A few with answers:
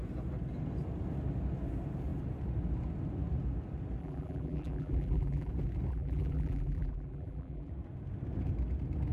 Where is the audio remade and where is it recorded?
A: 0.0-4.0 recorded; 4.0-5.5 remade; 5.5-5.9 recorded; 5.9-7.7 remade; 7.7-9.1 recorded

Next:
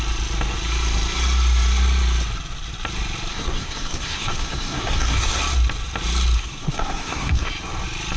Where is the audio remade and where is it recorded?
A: 0.0-3.3 recorded; 3.3-5.4 remade; 5.4-6.4 recorded; 6.4-7.5 remade; 7.5-8.2 recorded

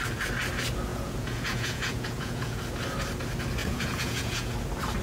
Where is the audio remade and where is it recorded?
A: 0.0-0.9 recorded; 0.9-2.6 remade; 2.6-3.6 recorded; 3.6-4.5 remade; 4.5-5.0 recorded

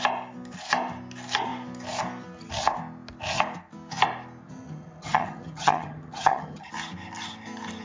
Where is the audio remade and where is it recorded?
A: 0.0-4.4 recorded; 4.4-6.7 remade; 6.7-7.8 recorded

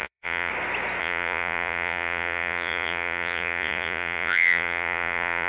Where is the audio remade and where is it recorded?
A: 0.0-0.5 remade; 0.5-1.0 recorded; 1.0-5.5 remade